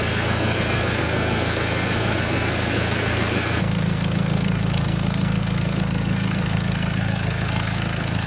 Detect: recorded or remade remade